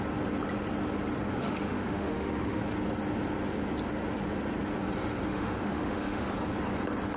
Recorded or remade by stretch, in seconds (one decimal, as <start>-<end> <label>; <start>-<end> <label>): 0.0-1.4 recorded; 1.4-2.6 remade; 2.6-5.3 recorded; 5.3-6.3 remade; 6.3-7.2 recorded